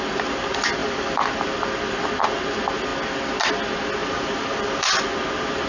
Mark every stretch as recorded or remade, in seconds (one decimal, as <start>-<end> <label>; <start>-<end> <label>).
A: 0.0-0.8 recorded; 0.8-1.3 remade; 1.3-4.0 recorded; 4.0-5.0 remade; 5.0-5.7 recorded